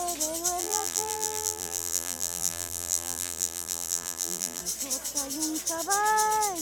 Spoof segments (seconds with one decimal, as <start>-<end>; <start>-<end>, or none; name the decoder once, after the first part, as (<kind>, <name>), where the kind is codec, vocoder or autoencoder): 0.6-4.6 (vocoder, BigVGAN v2)